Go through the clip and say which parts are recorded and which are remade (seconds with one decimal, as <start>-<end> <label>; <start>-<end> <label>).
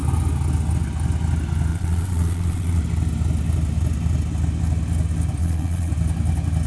0.0-1.7 recorded; 1.7-2.8 remade; 2.8-5.4 recorded; 5.4-5.9 remade; 5.9-6.7 recorded